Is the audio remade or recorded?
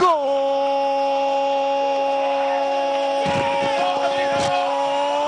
recorded